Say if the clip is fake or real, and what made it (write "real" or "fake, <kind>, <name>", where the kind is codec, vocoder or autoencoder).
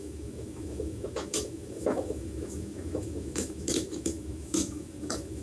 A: fake, autoencoder, DAC-VAE